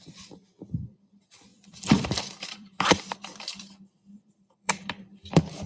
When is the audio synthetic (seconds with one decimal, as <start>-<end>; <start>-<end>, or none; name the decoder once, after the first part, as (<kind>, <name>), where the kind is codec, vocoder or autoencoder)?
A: 0.0-5.7 (vocoder, BigVGAN v2)